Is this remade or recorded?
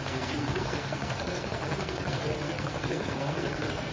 remade